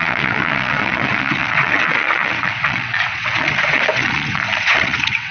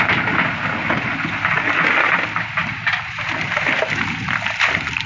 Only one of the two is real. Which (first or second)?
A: second